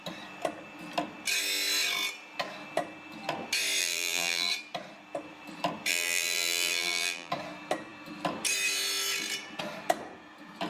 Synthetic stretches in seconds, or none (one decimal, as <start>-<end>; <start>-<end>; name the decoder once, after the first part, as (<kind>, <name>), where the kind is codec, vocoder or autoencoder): 3.8-4.5 (vocoder, BigVGAN v2); 5.9-7.3